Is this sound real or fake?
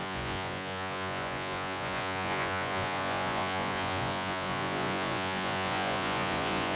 fake